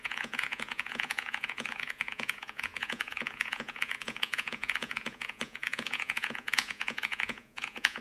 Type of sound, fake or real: fake